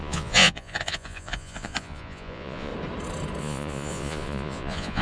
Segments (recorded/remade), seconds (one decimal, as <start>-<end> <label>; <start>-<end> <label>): 0.0-2.7 remade; 2.7-3.4 recorded; 3.4-5.0 remade